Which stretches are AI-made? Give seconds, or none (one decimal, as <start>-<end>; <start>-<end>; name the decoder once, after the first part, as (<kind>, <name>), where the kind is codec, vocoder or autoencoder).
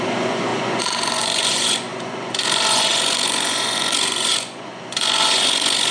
0.0-5.9 (vocoder, Vocos)